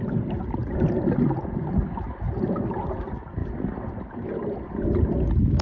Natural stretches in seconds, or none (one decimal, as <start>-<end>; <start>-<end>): 0.0-5.6

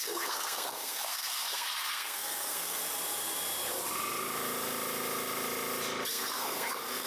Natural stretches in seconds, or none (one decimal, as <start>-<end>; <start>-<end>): 2.8-6.1